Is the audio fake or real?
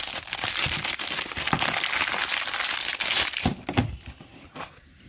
real